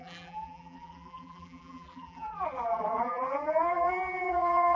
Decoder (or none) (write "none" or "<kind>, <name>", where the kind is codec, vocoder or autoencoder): vocoder, BigVGAN v2